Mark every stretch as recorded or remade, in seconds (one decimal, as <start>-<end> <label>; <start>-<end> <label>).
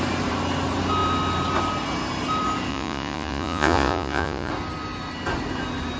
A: 0.0-2.7 recorded; 2.7-4.5 remade; 4.5-6.0 recorded